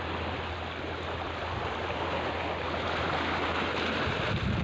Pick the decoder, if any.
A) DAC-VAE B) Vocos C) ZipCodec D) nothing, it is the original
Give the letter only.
D